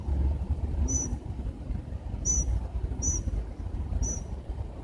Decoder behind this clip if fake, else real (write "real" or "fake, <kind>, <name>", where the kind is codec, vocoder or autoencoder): fake, vocoder, BigVGAN v2